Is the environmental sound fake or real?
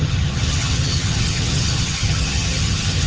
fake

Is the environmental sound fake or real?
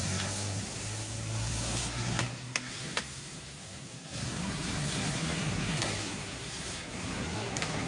fake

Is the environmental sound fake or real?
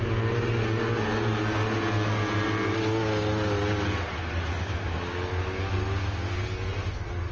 real